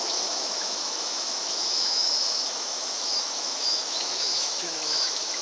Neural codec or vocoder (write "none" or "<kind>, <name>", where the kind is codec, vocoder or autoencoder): autoencoder, DAC-VAE